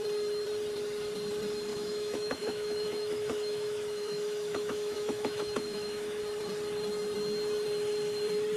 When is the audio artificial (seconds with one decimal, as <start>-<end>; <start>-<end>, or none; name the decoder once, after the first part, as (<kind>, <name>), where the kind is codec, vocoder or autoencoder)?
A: 1.7-6.2 (autoencoder, DAC-VAE)